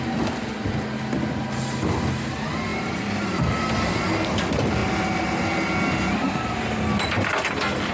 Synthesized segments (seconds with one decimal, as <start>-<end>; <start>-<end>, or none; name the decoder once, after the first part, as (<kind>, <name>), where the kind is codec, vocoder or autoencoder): 2.7-3.5 (vocoder, BigVGAN v2)